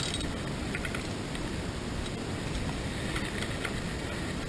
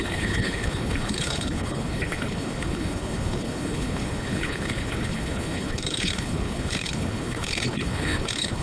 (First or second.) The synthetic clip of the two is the second